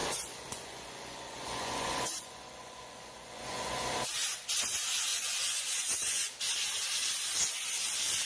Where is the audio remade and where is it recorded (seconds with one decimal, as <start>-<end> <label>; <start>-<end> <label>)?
0.0-3.9 remade; 3.9-5.1 recorded; 5.1-6.3 remade; 6.3-8.3 recorded